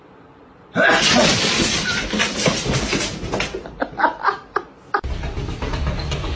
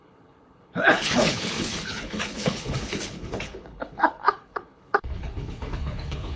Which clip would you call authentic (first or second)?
first